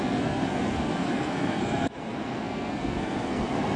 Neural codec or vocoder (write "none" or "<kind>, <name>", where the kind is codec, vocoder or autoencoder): codec, SNAC